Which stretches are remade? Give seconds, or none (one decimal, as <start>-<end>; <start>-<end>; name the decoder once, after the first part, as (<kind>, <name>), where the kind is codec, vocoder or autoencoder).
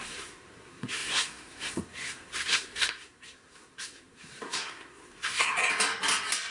0.0-5.6 (codec, SNAC)